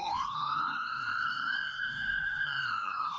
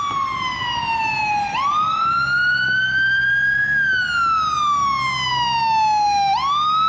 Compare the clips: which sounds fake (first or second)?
first